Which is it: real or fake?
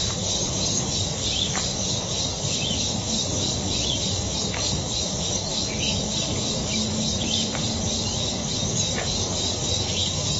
fake